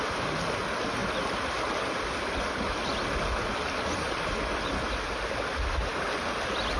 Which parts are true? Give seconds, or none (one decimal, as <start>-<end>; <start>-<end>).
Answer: 0.0-6.8